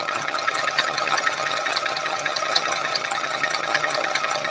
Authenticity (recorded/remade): remade